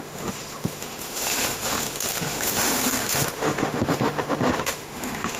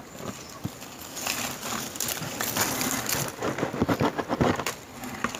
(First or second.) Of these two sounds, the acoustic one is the second